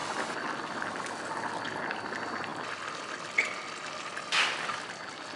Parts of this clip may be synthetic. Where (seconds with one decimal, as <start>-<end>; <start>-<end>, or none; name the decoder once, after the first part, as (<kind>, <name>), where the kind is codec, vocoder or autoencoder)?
none

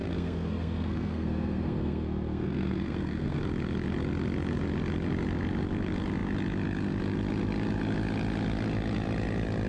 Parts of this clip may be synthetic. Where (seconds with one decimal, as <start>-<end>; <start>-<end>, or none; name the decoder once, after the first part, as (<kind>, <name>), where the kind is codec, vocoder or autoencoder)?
0.0-3.4 (codec, SNAC)

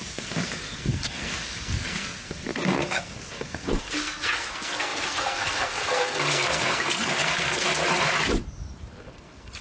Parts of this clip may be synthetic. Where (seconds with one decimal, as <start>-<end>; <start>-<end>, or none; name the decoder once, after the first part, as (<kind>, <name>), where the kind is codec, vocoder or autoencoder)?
0.0-7.8 (codec, SNAC); 9.0-9.6

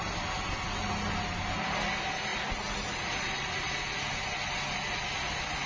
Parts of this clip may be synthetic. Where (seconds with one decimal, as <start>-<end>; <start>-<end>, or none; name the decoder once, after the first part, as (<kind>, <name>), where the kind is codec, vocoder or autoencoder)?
none

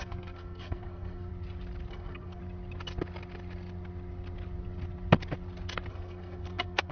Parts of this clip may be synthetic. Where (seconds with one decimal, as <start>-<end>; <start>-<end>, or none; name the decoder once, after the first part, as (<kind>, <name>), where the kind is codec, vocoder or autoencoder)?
0.0-1.3 (codec, SNAC); 1.9-2.4; 5.9-6.9

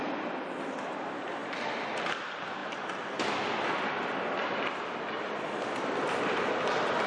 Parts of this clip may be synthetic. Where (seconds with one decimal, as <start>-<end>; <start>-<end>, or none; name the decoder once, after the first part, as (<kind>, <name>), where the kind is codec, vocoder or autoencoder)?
none

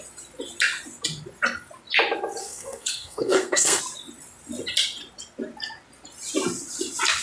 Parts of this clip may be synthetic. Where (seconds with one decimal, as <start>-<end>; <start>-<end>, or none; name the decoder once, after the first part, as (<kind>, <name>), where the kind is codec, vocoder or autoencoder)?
2.4-3.8 (codec, SNAC)